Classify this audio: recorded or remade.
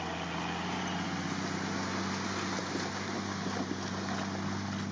recorded